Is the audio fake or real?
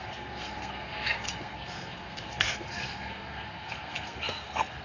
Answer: fake